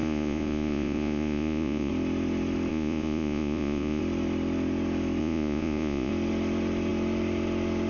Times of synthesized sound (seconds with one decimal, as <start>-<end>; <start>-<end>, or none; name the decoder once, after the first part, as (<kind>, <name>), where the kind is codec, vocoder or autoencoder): 0.0-1.9 (vocoder, Vocos); 2.7-4.0; 5.2-6.1